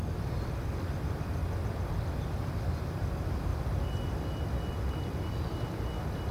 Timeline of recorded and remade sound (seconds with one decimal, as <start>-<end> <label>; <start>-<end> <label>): 0.0-6.3 recorded